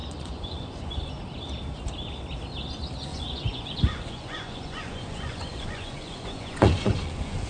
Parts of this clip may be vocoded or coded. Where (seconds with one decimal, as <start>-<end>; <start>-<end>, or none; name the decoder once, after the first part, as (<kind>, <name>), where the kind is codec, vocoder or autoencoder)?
0.0-1.1 (vocoder, Vocos); 3.1-7.5